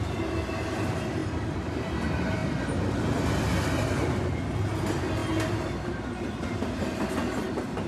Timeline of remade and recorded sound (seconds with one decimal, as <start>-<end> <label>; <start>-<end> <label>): 0.0-7.9 recorded